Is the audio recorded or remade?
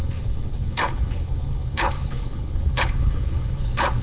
remade